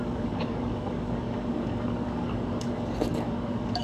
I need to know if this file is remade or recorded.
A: remade